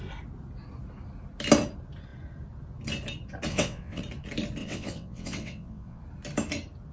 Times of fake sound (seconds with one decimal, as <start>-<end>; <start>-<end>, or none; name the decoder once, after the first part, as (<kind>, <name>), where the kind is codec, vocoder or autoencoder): 3.5-4.0 (vocoder, WaveNeXt); 4.6-6.0

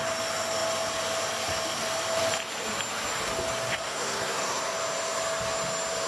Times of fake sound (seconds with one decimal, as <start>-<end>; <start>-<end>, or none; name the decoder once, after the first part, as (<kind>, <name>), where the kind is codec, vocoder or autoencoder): 3.7-4.6 (codec, SNAC)

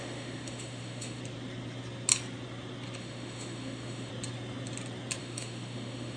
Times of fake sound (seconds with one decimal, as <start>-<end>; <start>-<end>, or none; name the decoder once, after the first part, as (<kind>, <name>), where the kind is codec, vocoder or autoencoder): 0.0-1.2 (autoencoder, DAC-VAE); 3.0-4.1; 5.2-6.2

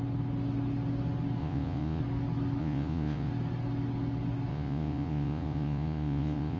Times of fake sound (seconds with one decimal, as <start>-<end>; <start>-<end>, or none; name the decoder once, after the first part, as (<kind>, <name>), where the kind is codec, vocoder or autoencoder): 1.4-2.0 (vocoder, Vocos); 2.6-3.3; 4.5-6.6

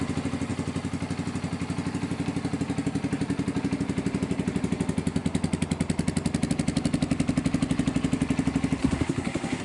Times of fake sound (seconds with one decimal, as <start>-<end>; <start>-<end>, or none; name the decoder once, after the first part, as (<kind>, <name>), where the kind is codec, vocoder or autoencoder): 8.8-9.6 (codec, SNAC)

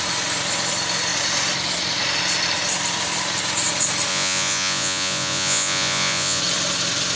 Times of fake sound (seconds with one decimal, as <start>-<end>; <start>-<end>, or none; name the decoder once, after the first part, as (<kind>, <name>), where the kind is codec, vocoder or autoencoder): 4.1-6.4 (vocoder, Vocos)

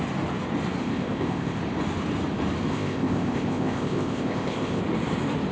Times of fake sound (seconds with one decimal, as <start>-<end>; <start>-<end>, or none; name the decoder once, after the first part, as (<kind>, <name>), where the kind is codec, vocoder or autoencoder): 0.8-1.6 (codec, ZipCodec); 2.7-4.8